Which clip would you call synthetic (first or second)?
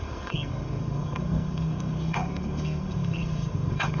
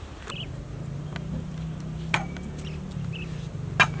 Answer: first